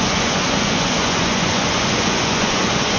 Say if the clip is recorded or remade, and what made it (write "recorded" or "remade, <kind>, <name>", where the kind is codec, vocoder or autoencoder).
remade, vocoder, Vocos